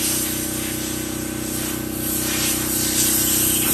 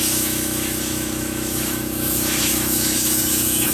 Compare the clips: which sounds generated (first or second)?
second